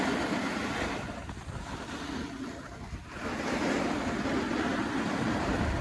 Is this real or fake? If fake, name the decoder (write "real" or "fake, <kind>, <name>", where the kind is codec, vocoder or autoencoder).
real